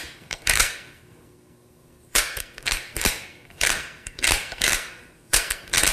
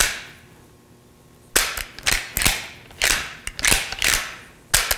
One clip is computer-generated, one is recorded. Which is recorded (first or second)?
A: second